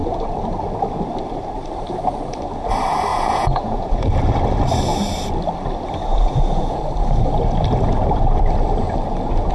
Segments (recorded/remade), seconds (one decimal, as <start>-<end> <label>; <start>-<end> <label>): 0.0-3.1 recorded; 3.1-4.2 remade; 4.2-6.1 recorded; 6.1-6.8 remade; 6.8-9.5 recorded